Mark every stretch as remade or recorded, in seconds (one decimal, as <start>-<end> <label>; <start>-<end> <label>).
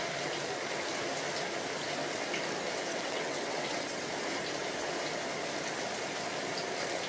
0.0-2.9 recorded; 2.9-4.1 remade; 4.1-7.1 recorded